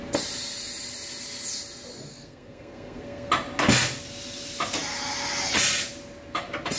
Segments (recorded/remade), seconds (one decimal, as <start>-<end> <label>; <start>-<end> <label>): 0.0-2.1 recorded; 2.1-3.3 remade; 3.3-6.8 recorded

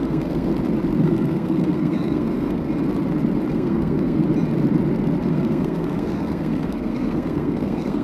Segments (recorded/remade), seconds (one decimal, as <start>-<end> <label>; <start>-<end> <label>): 0.0-0.5 remade; 0.5-1.0 recorded; 1.0-2.7 remade; 2.7-3.5 recorded; 3.5-4.2 remade; 4.2-5.3 recorded; 5.3-8.0 remade